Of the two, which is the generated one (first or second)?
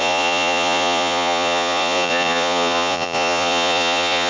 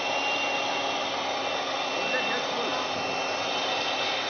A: first